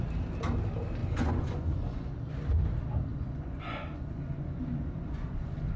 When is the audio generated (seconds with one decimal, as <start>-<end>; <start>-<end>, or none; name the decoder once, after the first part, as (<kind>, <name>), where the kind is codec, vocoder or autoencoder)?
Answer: 1.0-2.1 (vocoder, Vocos); 3.1-5.8